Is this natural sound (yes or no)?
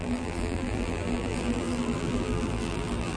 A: no